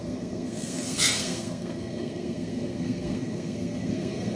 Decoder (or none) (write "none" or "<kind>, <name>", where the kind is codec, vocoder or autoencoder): codec, SNAC